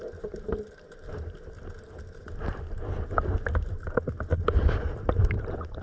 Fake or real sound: fake